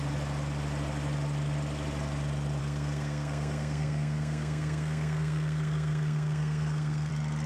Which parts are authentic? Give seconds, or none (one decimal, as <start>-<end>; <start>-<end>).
0.0-2.6; 7.1-7.5